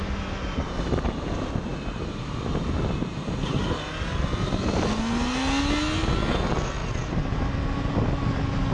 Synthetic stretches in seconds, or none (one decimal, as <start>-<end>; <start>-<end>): none